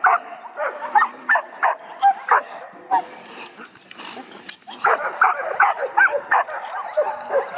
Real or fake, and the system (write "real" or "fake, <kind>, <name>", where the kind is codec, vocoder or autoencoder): real